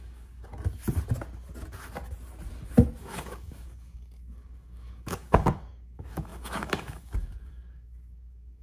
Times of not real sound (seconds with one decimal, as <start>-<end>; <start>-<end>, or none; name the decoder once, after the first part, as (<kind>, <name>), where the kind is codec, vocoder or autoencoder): 0.0-0.5 (codec, DAC); 3.0-8.6